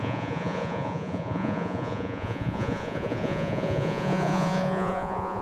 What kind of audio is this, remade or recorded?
remade